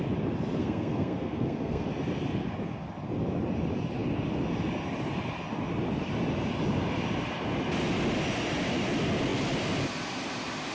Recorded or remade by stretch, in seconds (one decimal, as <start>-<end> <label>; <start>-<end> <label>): 0.0-0.6 recorded; 0.6-1.9 remade; 1.9-10.7 recorded